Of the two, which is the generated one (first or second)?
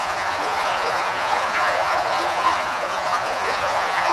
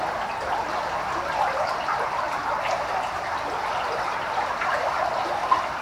first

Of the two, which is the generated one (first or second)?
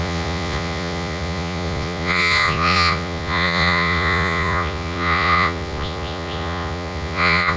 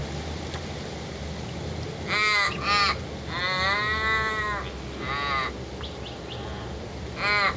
first